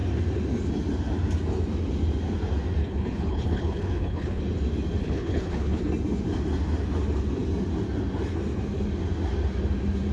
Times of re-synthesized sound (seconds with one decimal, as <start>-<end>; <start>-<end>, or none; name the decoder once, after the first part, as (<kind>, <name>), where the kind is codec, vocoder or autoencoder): 2.8-4.4 (codec, HILCodec); 5.0-5.8